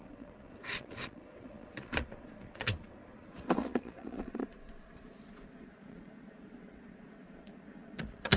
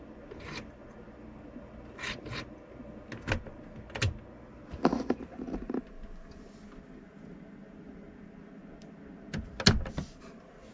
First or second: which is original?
second